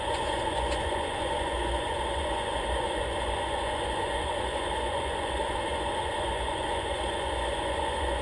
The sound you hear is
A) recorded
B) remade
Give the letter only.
B